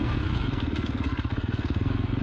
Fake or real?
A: fake